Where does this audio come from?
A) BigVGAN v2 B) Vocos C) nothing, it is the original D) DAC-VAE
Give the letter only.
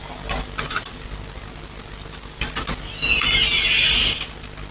C